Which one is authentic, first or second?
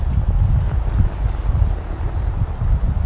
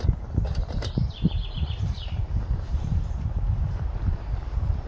first